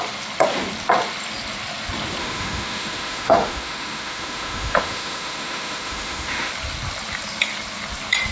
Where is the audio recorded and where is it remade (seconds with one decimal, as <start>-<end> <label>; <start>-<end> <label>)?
0.0-2.2 recorded; 2.2-6.5 remade; 6.5-8.3 recorded